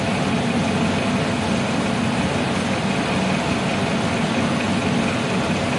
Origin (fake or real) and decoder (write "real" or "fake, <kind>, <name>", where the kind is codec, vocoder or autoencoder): real